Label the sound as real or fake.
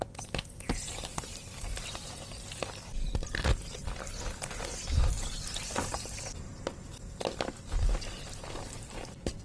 fake